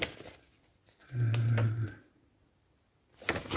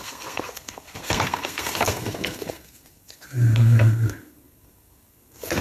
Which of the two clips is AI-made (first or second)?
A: second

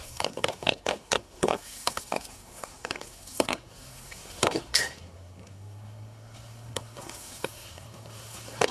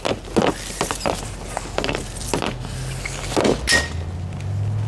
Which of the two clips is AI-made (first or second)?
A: first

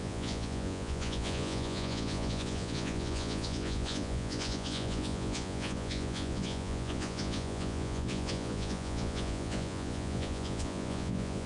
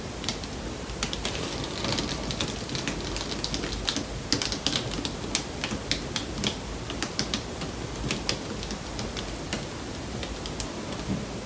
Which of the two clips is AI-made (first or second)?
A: first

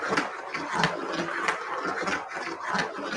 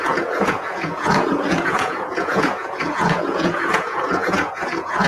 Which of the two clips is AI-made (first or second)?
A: second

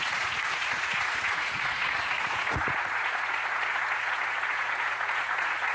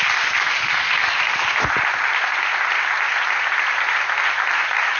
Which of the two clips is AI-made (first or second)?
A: first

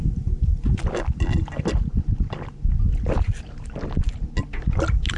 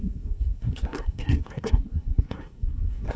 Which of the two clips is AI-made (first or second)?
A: second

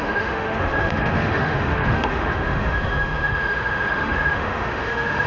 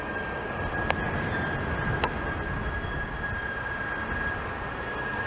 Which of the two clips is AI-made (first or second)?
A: first